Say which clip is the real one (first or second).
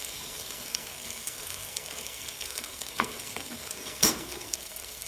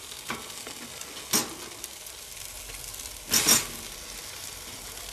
second